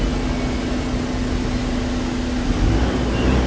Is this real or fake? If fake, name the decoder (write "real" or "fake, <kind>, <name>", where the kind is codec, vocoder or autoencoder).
real